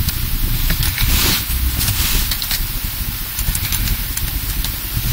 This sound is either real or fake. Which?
real